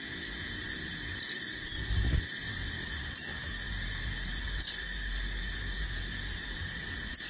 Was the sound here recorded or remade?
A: recorded